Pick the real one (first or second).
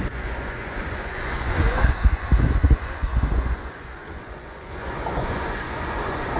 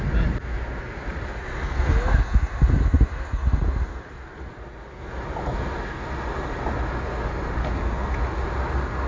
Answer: second